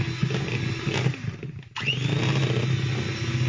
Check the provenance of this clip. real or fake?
real